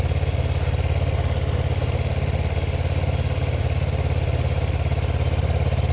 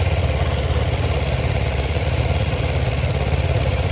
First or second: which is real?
first